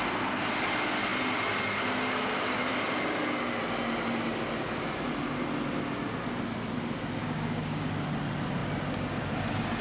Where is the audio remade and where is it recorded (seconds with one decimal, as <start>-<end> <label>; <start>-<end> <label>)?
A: 0.0-7.2 recorded; 7.2-7.9 remade; 7.9-9.8 recorded